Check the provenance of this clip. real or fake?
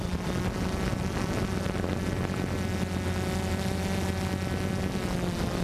real